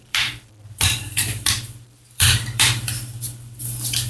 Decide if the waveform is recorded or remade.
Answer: remade